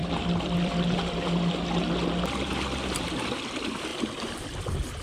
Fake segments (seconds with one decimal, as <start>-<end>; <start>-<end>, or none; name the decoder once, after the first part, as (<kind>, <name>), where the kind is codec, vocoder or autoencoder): 0.0-0.7 (vocoder, BigVGAN v2)